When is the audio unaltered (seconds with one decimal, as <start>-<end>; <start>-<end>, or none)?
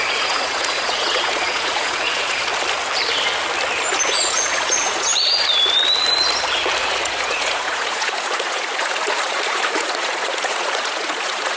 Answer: 2.5-4.1; 5.1-6.8